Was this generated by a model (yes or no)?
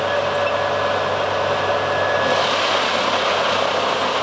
no